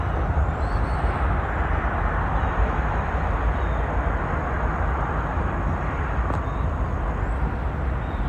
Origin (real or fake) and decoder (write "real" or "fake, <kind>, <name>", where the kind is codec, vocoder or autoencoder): real